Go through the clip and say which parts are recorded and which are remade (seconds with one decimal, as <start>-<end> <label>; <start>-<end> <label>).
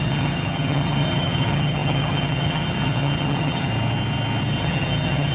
0.0-3.7 remade; 3.7-4.6 recorded; 4.6-5.3 remade